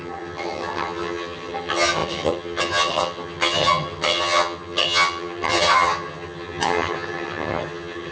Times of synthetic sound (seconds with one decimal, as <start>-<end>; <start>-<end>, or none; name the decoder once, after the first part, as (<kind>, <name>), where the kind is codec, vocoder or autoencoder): 0.0-8.1 (vocoder, HiFi-GAN)